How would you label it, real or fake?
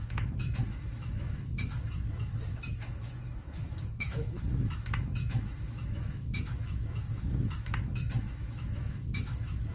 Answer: fake